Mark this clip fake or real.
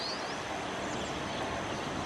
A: real